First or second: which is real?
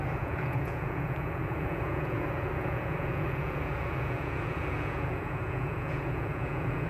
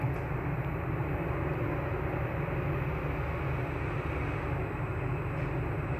second